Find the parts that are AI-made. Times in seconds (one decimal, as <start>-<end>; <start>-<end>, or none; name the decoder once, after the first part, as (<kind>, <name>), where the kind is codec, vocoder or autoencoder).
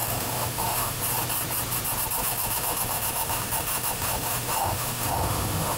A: 0.0-1.0 (autoencoder, DAC-VAE); 2.2-5.8